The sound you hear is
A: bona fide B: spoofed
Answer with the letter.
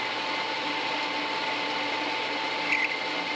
A